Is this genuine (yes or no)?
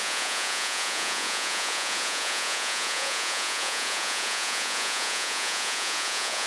no